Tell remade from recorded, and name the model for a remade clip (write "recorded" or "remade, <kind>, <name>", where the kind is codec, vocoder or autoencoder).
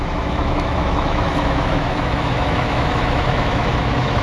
remade, autoencoder, DAC-VAE